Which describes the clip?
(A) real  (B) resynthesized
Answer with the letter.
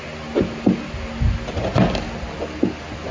A